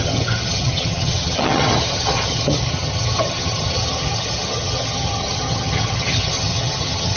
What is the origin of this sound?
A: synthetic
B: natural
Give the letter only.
A